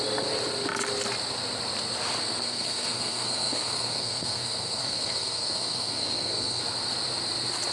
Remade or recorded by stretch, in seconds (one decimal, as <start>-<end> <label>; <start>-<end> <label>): 0.0-2.4 recorded; 2.4-6.6 remade; 6.6-7.7 recorded